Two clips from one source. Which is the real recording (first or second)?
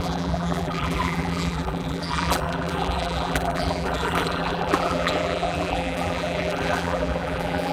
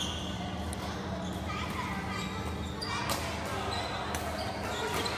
second